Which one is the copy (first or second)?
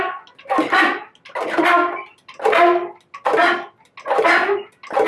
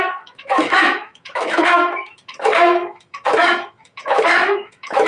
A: second